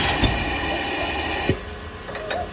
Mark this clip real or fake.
real